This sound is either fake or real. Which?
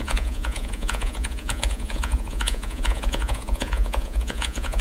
fake